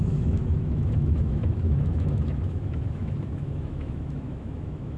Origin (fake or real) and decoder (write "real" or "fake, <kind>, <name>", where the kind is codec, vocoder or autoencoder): fake, autoencoder, DAC-VAE